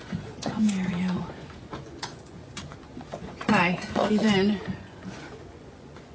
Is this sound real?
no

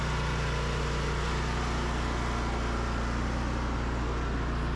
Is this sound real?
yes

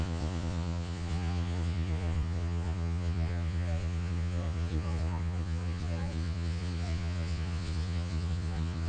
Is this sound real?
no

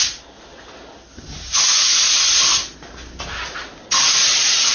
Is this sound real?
yes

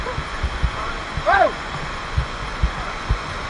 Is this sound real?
no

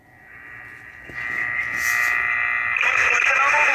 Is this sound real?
yes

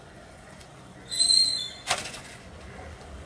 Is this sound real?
no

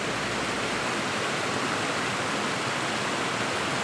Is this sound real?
yes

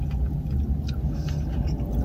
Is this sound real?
yes